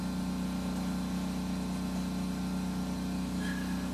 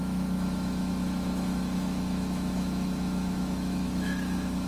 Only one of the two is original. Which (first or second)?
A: first